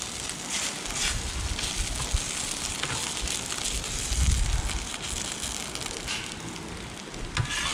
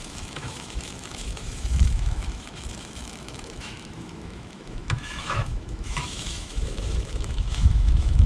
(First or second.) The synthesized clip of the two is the second